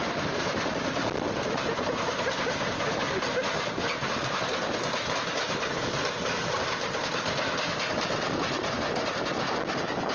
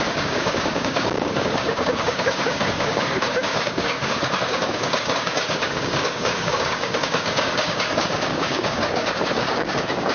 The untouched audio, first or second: first